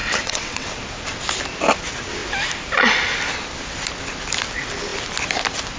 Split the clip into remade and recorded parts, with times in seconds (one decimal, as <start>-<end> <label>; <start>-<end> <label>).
0.0-0.7 remade; 0.7-5.8 recorded

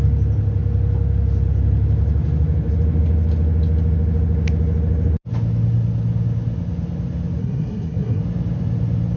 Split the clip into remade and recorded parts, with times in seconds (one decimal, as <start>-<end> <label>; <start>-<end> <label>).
0.0-7.4 recorded; 7.4-8.2 remade; 8.2-9.2 recorded

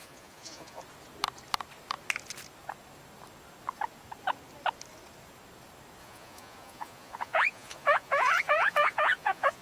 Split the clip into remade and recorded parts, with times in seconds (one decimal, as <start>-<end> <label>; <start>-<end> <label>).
0.0-0.8 remade; 0.8-6.0 recorded; 6.0-9.6 remade

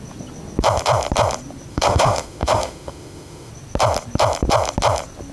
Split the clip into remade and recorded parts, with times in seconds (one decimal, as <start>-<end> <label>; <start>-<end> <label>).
0.0-1.7 recorded; 1.7-3.5 remade; 3.5-5.3 recorded

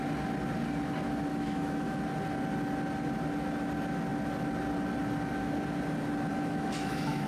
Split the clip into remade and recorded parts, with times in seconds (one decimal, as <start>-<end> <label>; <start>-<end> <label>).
0.0-1.3 recorded; 1.3-2.0 remade; 2.0-6.3 recorded; 6.3-7.3 remade

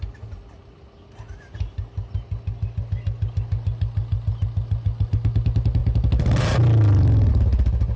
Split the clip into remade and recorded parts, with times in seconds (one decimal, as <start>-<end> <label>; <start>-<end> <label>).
0.0-8.0 recorded

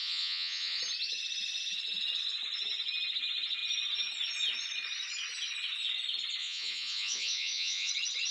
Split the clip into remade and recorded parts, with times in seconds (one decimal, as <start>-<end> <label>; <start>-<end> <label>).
0.0-0.8 remade; 0.8-6.4 recorded; 6.4-7.9 remade; 7.9-8.3 recorded